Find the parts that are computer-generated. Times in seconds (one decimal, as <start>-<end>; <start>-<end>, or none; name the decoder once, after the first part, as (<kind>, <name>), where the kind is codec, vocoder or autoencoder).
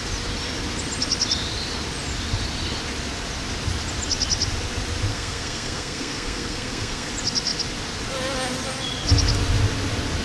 5.1-7.1 (codec, SNAC)